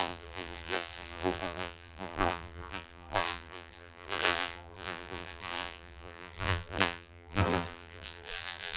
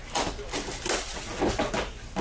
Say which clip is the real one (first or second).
second